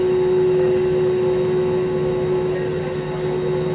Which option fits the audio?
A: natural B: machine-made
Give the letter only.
A